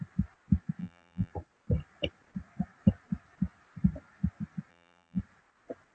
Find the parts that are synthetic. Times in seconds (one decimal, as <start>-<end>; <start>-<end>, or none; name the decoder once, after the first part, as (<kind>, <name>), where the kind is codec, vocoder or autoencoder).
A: 0.8-1.3 (vocoder, BigVGAN v2); 4.7-5.2